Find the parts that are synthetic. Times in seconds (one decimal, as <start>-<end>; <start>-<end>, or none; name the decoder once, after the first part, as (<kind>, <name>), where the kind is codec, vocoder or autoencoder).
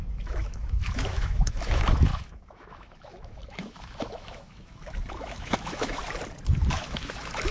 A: 0.0-6.0 (autoencoder, DAC-VAE); 6.7-7.5